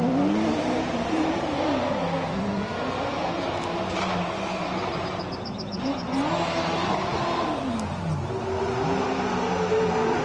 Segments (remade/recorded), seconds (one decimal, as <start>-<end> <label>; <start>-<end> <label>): 0.0-4.9 recorded; 4.9-5.8 remade; 5.8-10.2 recorded